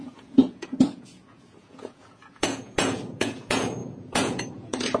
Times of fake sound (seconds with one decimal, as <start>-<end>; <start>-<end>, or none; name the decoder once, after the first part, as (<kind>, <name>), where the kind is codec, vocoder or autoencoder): 0.0-5.0 (vocoder, Vocos)